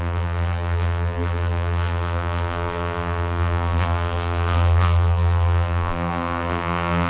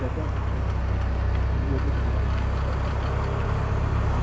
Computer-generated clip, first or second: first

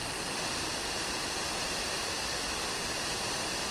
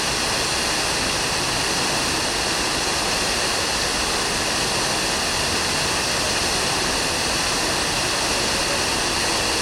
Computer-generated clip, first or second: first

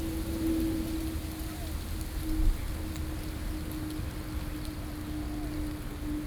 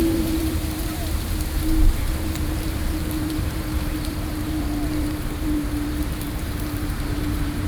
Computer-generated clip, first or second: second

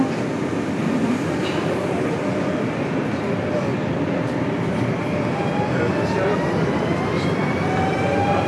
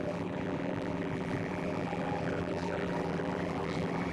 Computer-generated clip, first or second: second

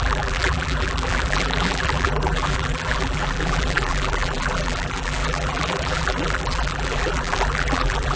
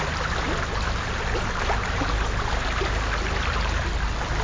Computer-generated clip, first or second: first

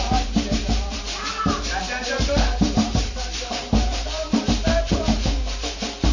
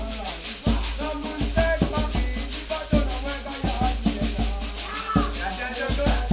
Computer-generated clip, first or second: first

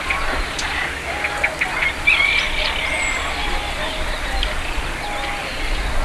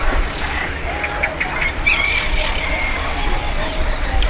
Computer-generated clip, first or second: second